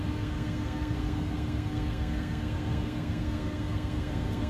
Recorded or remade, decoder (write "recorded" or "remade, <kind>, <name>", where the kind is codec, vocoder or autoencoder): remade, codec, SNAC